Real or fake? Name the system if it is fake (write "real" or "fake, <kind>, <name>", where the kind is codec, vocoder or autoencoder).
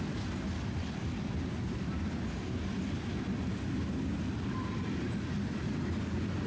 real